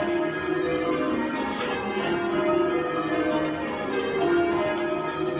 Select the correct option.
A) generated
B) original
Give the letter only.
B